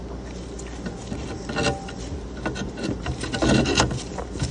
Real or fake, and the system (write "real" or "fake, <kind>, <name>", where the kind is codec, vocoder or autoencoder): real